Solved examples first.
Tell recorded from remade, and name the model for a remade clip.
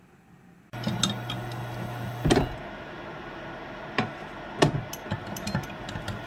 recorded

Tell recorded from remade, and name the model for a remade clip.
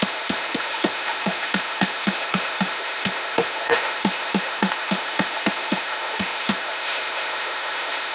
remade, autoencoder, DAC-VAE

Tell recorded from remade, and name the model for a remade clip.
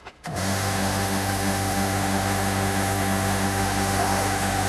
remade, autoencoder, DAC-VAE